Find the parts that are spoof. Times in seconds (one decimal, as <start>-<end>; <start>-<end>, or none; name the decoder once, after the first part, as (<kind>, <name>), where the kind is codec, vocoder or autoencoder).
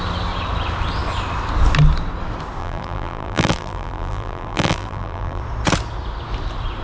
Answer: 2.6-5.4 (vocoder, BigVGAN v2)